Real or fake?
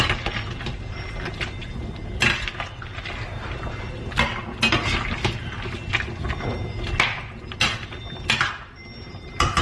real